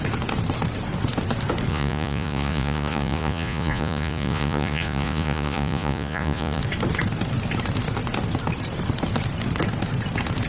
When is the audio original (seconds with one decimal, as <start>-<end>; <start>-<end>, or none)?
0.0-1.7; 6.6-10.5